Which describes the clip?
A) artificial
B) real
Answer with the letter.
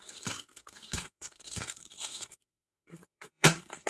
A